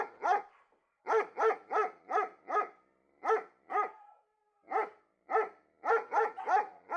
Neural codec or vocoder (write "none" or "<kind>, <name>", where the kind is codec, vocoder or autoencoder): none